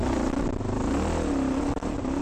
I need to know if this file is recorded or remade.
recorded